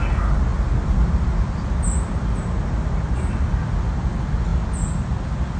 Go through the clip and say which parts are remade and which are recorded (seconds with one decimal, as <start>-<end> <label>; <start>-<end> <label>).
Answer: 0.0-5.6 recorded